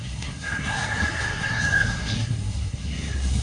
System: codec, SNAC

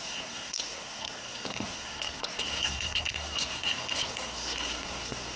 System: codec, SNAC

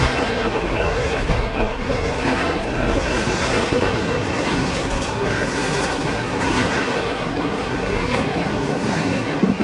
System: codec, SNAC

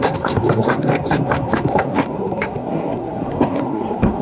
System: codec, SNAC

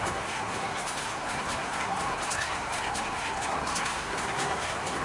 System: codec, SNAC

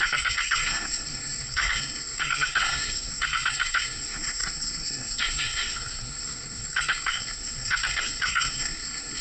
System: codec, SNAC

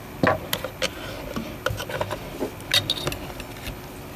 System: none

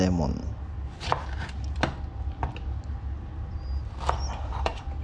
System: none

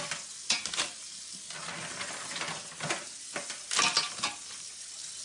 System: none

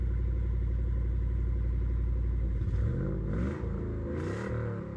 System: none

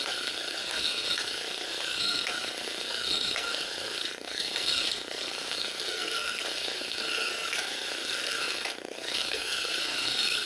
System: codec, SNAC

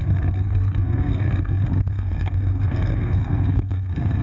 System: codec, SNAC